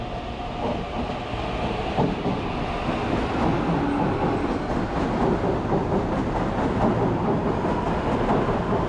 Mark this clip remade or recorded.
recorded